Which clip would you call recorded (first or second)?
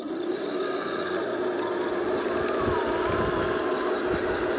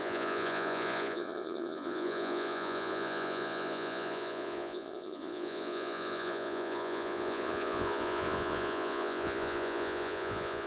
first